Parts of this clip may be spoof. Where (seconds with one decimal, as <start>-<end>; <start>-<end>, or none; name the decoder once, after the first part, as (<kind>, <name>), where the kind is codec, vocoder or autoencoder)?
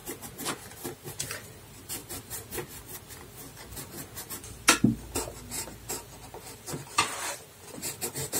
none